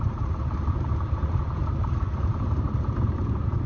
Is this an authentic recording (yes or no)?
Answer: yes